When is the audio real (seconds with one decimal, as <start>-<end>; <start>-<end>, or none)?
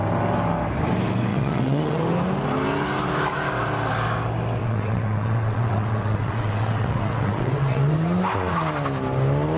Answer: 0.0-1.3; 2.0-4.6; 7.9-9.6